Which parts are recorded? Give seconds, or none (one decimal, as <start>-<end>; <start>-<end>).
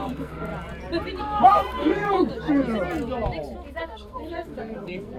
0.5-1.2; 2.3-3.8